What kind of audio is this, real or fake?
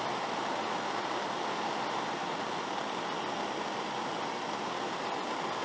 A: real